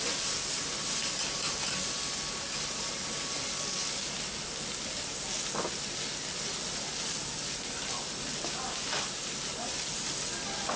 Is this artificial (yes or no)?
no